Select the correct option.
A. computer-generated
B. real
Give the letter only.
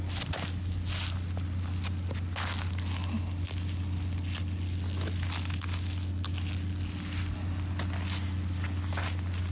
B